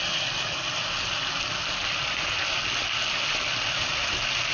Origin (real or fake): real